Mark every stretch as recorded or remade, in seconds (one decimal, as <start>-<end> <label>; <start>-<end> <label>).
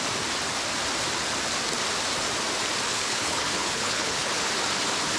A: 0.0-2.9 recorded; 2.9-4.5 remade; 4.5-5.2 recorded